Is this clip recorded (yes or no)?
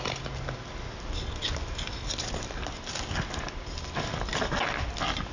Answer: yes